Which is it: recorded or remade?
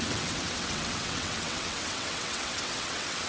remade